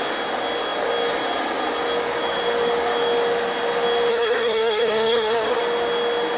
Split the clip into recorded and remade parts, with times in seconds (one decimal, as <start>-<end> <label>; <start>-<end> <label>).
0.0-4.1 recorded; 4.1-5.6 remade; 5.6-6.4 recorded